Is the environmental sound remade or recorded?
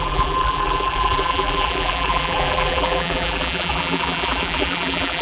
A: remade